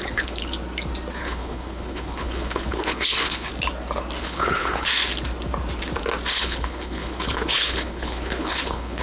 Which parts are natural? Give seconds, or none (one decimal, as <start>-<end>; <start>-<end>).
0.4-1.2; 3.5-4.2; 4.9-6.3